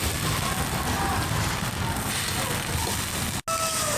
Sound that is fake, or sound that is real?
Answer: real